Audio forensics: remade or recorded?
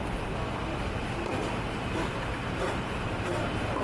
recorded